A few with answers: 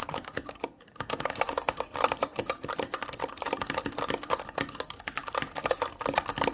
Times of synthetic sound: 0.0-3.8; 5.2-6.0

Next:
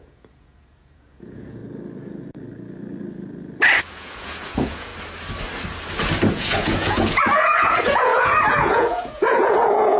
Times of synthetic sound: 0.0-1.6; 3.8-4.9; 6.3-10.0

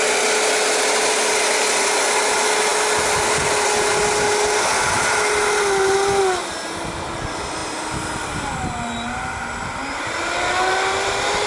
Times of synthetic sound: none

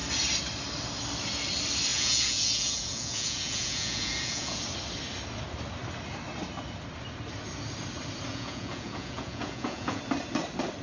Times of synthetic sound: 1.9-4.6; 8.3-10.0

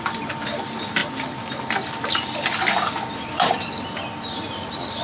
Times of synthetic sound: none

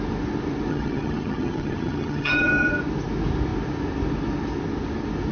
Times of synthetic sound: 0.7-2.7

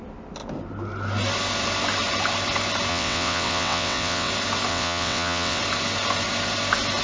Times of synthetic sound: 2.9-4.3; 4.7-5.6

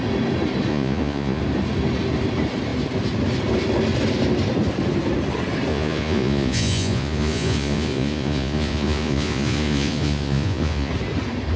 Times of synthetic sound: 0.7-1.4; 5.7-10.9